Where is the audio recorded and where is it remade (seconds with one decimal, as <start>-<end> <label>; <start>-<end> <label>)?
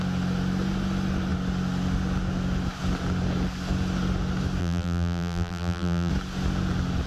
0.0-4.6 recorded; 4.6-6.1 remade; 6.1-7.1 recorded